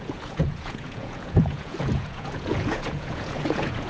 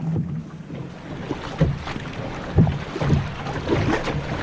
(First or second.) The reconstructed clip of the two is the first